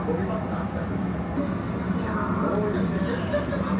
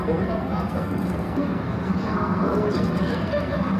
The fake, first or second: second